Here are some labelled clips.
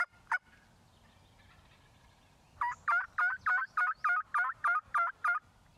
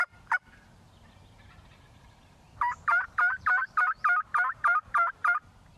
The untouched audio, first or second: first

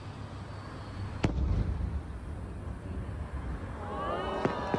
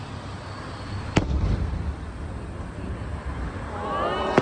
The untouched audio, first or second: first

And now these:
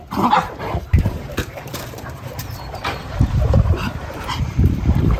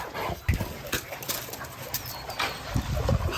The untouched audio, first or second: second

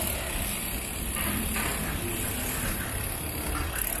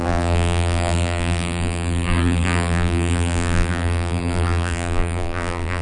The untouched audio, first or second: first